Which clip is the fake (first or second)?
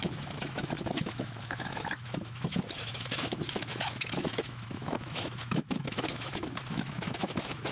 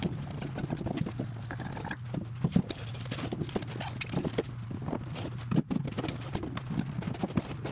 first